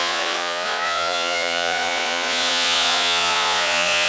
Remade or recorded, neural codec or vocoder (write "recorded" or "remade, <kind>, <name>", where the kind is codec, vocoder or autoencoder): remade, vocoder, Vocos